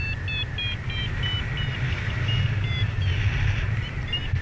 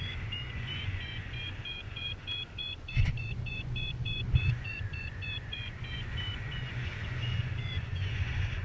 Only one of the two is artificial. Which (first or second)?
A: second